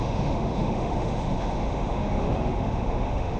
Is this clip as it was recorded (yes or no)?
no